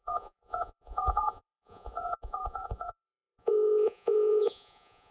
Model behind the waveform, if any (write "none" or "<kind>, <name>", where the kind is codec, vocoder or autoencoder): vocoder, Vocos